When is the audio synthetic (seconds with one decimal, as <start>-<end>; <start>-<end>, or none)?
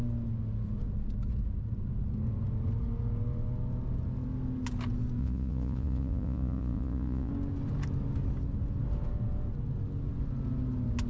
5.2-7.3